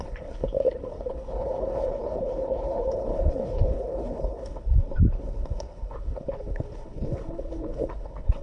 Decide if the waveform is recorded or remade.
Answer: remade